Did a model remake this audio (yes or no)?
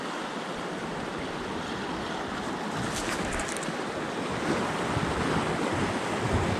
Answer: no